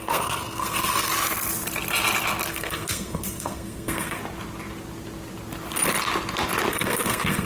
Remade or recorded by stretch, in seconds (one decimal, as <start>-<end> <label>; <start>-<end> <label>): 0.0-1.1 remade; 1.1-2.5 recorded; 2.5-4.2 remade; 4.2-6.7 recorded; 6.7-7.5 remade